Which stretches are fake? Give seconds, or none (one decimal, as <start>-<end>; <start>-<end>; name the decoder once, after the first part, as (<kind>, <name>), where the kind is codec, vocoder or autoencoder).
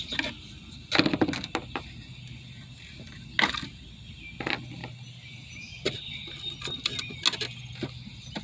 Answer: none